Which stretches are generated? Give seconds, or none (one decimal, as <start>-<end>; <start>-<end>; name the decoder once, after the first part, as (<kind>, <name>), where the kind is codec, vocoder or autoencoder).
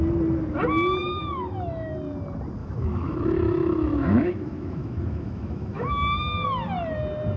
1.0-1.9 (autoencoder, DAC-VAE); 2.6-5.9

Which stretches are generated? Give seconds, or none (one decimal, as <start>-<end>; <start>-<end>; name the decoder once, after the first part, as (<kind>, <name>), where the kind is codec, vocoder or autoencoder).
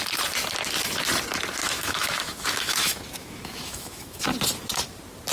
1.6-4.2 (autoencoder, DAC-VAE)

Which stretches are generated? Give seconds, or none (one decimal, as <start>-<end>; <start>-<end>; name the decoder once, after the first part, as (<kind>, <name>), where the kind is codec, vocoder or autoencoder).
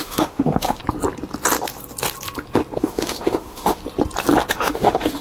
0.0-0.8 (autoencoder, DAC-VAE); 2.8-3.8; 4.5-5.2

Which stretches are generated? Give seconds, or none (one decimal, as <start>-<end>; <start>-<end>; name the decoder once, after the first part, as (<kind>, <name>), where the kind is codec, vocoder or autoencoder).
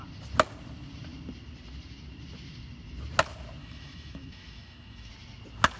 3.6-5.1 (autoencoder, DAC-VAE)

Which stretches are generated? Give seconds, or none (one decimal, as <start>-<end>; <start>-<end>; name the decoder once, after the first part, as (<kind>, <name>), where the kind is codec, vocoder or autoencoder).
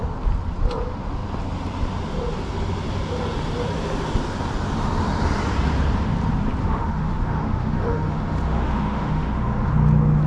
6.6-9.7 (autoencoder, DAC-VAE)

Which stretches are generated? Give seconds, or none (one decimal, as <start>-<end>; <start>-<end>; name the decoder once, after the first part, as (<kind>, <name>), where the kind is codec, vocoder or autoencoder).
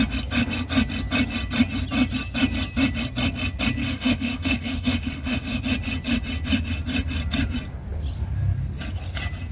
3.8-5.6 (autoencoder, DAC-VAE)